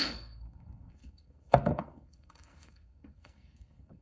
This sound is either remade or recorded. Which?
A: remade